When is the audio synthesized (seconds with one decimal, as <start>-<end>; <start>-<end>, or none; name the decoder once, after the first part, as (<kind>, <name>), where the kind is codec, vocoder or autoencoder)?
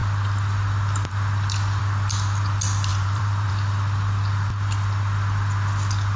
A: 2.9-3.5 (vocoder, BigVGAN v2)